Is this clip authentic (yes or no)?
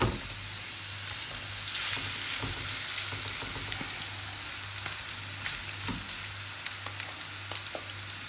yes